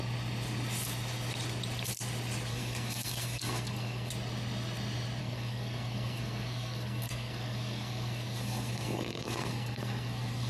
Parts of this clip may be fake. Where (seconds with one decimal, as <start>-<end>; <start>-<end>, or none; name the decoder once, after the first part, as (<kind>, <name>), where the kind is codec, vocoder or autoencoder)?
2.5-4.1 (codec, SNAC); 5.2-10.5